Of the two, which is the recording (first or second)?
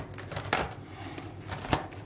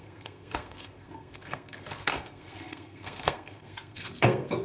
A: first